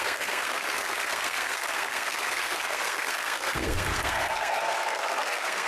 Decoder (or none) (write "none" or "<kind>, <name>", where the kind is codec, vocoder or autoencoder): codec, SNAC